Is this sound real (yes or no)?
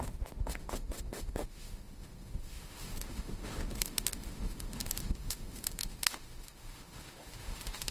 no